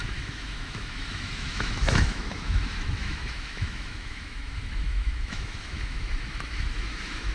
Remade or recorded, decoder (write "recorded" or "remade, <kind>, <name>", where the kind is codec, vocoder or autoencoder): remade, autoencoder, DAC-VAE